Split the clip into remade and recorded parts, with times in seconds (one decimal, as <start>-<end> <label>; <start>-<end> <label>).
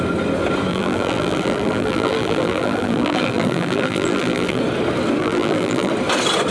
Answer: 0.0-0.7 recorded; 0.7-4.6 remade; 4.6-5.2 recorded; 5.2-5.9 remade; 5.9-6.5 recorded